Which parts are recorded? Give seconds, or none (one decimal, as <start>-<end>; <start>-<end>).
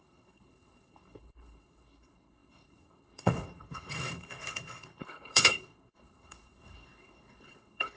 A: none